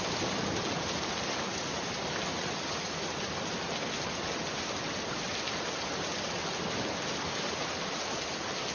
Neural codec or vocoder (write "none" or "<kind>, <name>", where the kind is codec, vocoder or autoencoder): none